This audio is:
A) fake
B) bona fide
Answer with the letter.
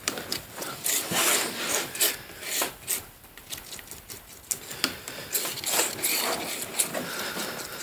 B